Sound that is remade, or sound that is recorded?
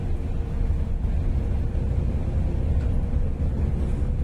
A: recorded